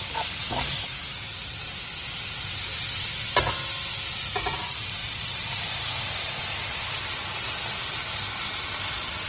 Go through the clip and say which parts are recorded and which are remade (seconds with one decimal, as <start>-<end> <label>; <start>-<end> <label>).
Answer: 0.0-9.3 recorded